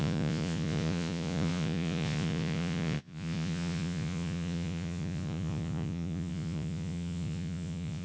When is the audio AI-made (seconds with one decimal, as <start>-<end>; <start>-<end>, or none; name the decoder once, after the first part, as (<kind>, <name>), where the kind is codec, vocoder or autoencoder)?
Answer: 0.0-8.0 (vocoder, Vocos)